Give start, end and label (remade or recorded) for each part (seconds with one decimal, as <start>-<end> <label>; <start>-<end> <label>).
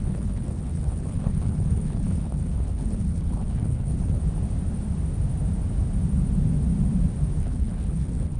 0.0-4.2 remade; 4.2-7.4 recorded; 7.4-8.4 remade